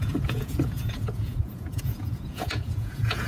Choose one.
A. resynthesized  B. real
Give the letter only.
A